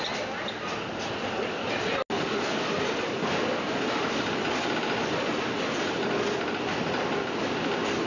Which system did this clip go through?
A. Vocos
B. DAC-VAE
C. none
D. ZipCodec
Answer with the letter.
C